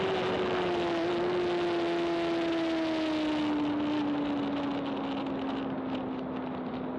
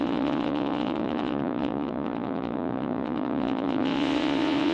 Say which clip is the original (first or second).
first